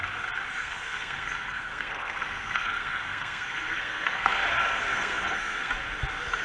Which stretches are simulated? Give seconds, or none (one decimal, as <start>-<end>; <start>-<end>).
0.6-4.4; 4.9-5.7

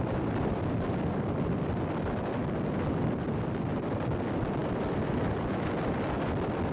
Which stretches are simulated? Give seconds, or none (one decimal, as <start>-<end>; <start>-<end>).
none

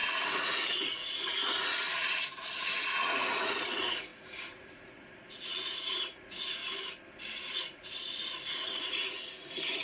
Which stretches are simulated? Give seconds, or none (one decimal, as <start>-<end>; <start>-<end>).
0.0-6.6; 7.2-9.8